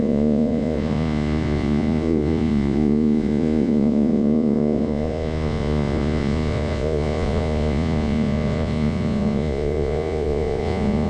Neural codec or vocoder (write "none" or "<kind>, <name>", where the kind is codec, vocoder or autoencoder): vocoder, Vocos